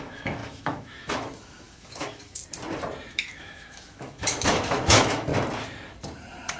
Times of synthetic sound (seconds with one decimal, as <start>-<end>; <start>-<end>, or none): 0.0-2.4; 3.1-5.3